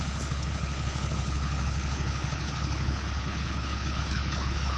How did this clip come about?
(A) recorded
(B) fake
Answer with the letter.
B